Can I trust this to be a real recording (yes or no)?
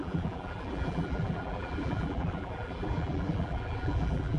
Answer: no